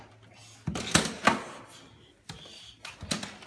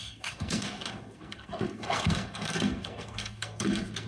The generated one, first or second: second